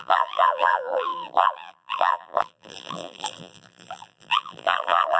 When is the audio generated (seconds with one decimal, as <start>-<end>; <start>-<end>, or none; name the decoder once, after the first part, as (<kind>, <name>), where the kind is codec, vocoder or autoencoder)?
0.0-5.2 (vocoder, BigVGAN v2)